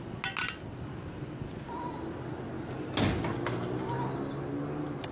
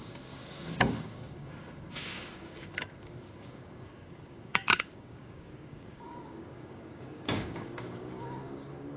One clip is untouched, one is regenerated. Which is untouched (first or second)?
first